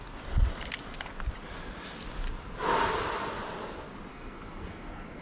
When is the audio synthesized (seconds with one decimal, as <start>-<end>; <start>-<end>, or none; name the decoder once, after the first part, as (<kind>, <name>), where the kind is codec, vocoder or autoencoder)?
4.1-5.2 (codec, SNAC)